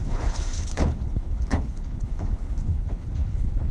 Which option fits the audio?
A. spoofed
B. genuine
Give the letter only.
A